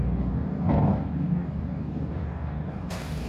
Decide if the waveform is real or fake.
fake